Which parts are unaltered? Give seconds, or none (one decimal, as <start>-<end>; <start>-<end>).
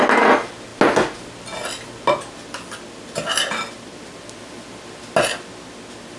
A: 0.0-6.2